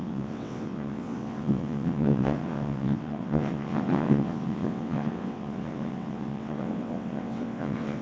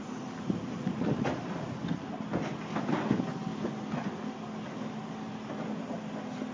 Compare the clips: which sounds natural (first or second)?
second